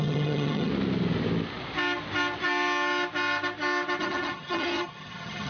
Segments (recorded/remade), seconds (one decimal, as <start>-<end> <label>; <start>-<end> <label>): 0.0-0.7 remade; 0.7-4.0 recorded; 4.0-5.5 remade